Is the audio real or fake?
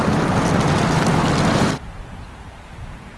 real